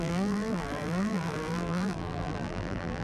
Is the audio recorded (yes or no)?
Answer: no